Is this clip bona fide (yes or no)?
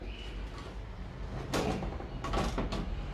yes